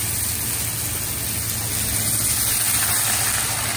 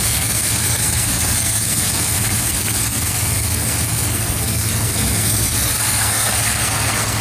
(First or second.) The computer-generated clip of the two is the second